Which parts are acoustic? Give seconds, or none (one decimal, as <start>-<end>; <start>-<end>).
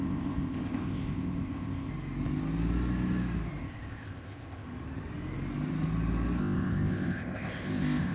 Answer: 1.9-3.6; 4.7-6.4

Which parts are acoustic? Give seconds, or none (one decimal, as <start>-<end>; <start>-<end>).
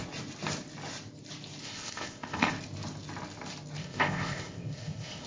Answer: 0.0-1.6; 2.5-3.8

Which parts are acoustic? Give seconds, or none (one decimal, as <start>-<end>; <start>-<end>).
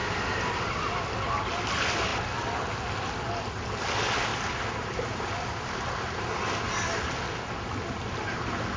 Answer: 0.0-8.8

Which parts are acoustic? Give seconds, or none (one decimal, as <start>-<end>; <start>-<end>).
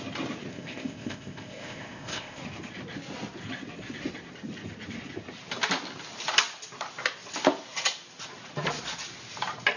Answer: 0.0-0.5; 2.4-9.8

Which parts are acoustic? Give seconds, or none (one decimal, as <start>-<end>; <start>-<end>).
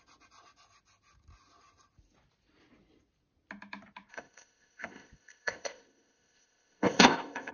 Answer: 0.0-4.1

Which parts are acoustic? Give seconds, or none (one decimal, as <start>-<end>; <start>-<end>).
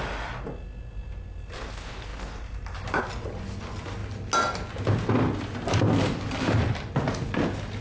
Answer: 0.0-7.8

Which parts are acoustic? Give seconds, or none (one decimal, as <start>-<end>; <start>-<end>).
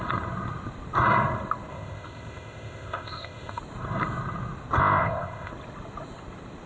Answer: 0.0-1.7; 3.6-4.8; 5.5-6.7